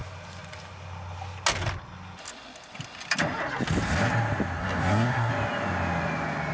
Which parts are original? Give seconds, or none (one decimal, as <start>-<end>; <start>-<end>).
0.0-4.6; 5.3-6.5